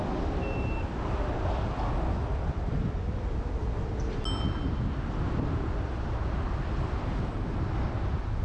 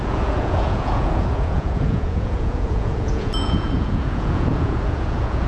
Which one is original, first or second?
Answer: first